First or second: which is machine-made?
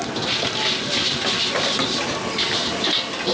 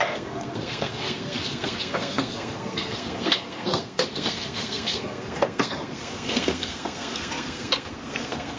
second